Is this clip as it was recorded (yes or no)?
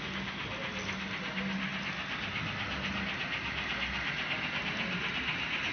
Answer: yes